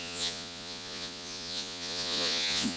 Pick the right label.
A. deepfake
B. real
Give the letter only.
A